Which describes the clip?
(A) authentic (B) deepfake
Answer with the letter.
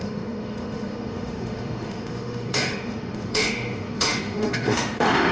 B